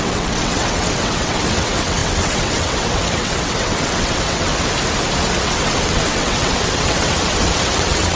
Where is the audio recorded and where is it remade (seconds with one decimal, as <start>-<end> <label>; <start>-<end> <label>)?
0.0-4.5 remade; 4.5-5.4 recorded; 5.4-8.2 remade